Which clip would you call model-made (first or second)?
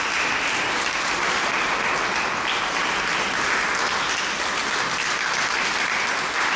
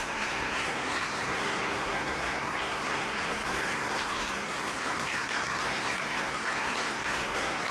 second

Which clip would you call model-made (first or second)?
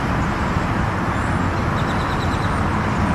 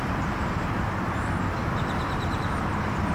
second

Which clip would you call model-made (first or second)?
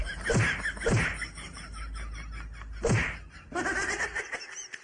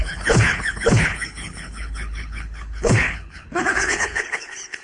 second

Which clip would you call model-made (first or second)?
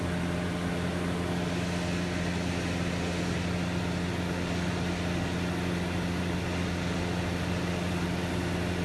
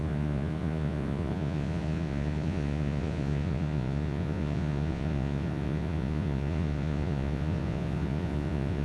second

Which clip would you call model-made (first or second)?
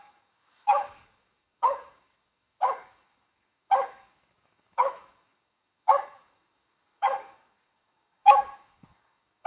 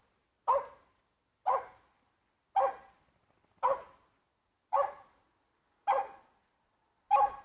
first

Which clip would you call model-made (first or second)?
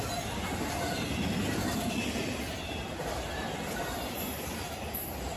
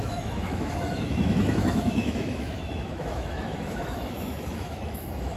second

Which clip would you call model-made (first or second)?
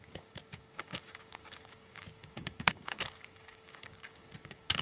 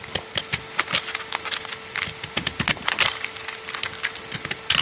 first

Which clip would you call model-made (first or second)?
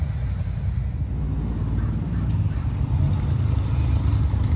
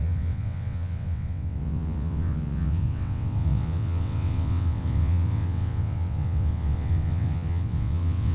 second